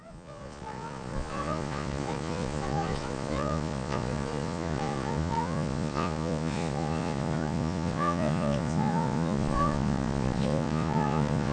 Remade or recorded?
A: remade